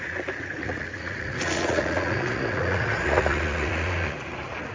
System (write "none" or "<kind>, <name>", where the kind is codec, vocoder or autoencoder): vocoder, Vocos